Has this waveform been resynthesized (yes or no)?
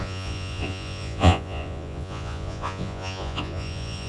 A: yes